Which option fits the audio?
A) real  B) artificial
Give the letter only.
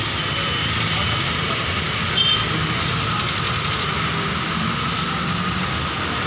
A